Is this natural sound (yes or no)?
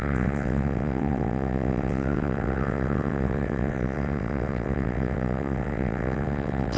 no